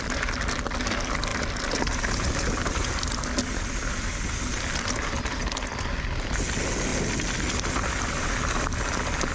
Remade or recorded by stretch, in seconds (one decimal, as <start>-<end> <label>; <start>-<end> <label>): 0.0-9.3 recorded